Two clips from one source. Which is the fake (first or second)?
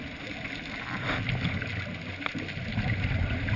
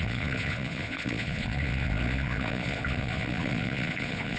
second